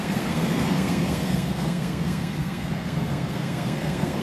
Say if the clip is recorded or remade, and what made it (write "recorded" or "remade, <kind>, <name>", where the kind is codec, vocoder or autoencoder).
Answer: remade, codec, SNAC